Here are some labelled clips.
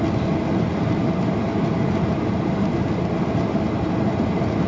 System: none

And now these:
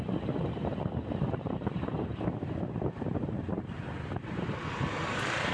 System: vocoder, BigVGAN v2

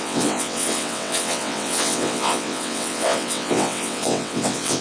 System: vocoder, WaveNeXt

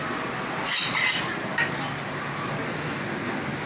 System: none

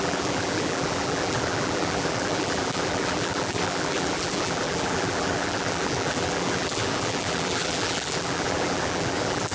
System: vocoder, BigVGAN v2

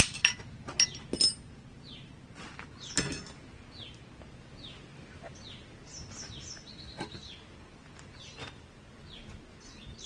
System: none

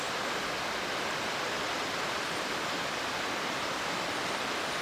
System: none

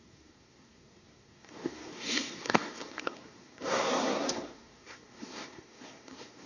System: codec, SNAC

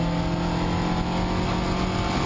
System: none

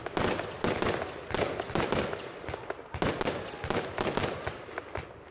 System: none